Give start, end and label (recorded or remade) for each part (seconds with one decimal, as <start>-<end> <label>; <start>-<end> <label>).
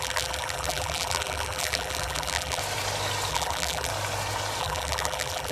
0.0-2.6 remade; 2.6-3.3 recorded; 3.3-3.9 remade; 3.9-4.6 recorded; 4.6-5.5 remade